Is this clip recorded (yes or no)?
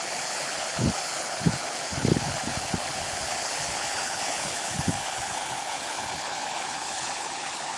no